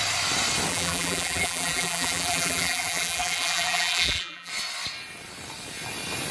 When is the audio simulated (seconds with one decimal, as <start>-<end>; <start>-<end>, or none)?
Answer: 0.7-4.5